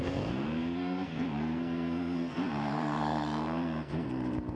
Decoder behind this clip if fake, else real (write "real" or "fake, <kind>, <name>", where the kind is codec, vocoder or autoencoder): fake, codec, SNAC